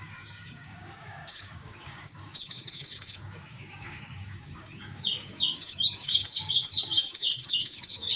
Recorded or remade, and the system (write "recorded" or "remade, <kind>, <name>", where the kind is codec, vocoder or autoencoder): remade, codec, DAC